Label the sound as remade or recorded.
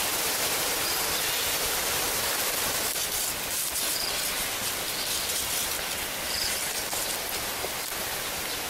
recorded